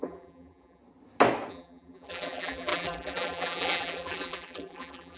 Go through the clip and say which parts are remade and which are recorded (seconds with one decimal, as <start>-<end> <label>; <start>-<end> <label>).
0.0-0.8 remade; 0.8-1.5 recorded; 1.5-5.2 remade